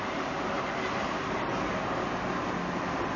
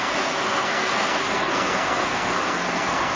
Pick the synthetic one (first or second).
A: second